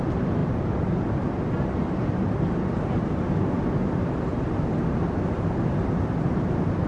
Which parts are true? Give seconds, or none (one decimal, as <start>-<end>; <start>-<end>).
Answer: 0.0-6.9